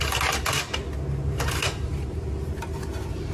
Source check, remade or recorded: recorded